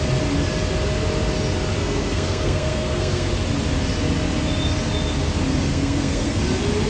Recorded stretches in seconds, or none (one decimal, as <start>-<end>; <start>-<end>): 0.0-1.8; 3.3-5.7; 6.4-6.9